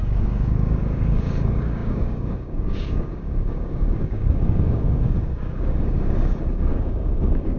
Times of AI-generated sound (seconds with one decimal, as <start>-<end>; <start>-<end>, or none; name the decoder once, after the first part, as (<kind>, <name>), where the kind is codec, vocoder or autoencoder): 0.0-7.6 (codec, DAC)